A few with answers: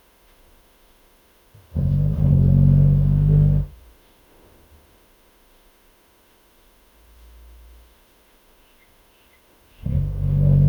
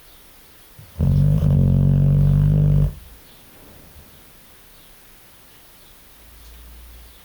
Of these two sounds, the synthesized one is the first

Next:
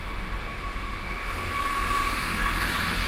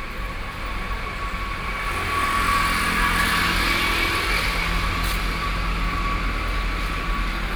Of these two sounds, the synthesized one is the first